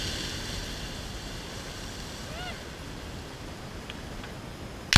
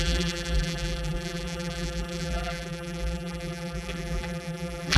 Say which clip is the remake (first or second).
second